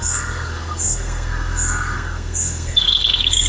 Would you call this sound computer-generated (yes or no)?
yes